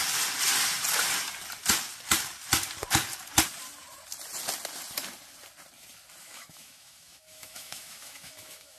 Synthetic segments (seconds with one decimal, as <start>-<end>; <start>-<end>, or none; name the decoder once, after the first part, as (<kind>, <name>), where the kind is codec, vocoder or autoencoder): 6.2-8.8 (autoencoder, DAC-VAE)